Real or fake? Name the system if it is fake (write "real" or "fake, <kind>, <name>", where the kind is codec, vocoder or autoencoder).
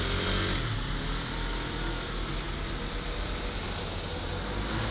real